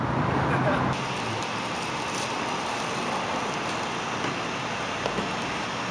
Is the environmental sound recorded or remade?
recorded